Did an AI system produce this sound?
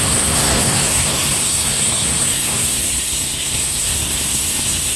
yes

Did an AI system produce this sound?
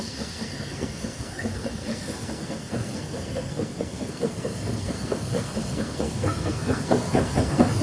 yes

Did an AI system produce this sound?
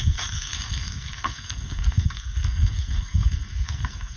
yes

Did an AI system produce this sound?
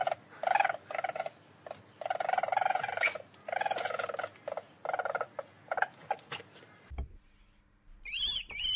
no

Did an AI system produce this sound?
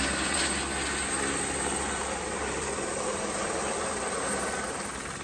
no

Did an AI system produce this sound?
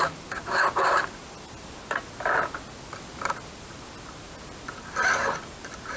no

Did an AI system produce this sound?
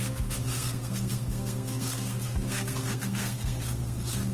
yes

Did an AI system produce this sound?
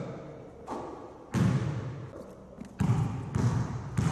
no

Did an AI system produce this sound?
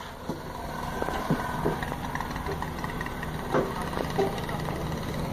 no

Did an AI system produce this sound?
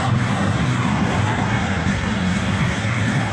yes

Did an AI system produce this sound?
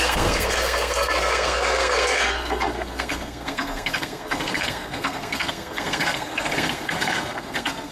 yes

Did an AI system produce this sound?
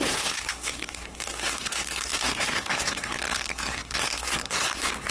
yes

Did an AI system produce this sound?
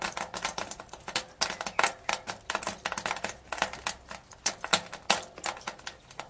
no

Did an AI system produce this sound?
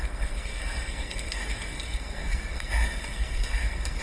yes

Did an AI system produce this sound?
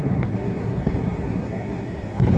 yes